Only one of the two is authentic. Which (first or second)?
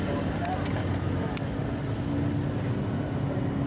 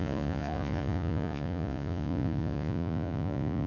first